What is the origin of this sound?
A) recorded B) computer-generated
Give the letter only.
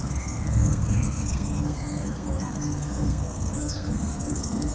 B